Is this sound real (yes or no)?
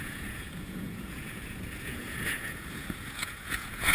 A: no